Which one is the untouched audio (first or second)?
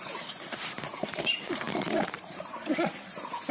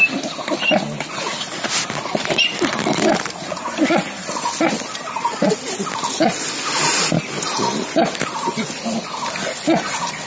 second